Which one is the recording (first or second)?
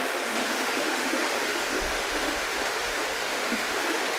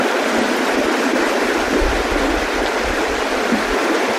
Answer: second